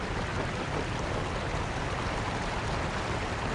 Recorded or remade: recorded